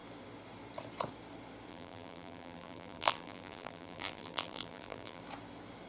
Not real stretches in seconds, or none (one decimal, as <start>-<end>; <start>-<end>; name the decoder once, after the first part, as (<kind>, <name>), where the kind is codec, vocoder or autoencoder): 1.7-5.2 (vocoder, BigVGAN v2)

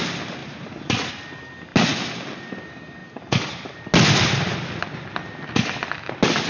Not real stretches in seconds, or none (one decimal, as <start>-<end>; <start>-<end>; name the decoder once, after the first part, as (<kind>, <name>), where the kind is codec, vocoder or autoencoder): 0.4-1.1 (vocoder, BigVGAN v2)

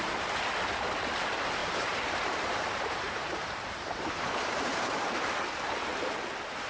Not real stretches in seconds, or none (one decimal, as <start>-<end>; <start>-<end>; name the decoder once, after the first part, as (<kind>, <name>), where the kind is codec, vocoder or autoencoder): 1.6-5.2 (vocoder, BigVGAN v2)

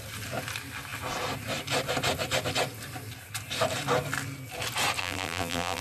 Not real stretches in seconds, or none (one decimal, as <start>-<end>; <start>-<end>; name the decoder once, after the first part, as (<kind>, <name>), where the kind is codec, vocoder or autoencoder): 5.0-5.8 (vocoder, BigVGAN v2)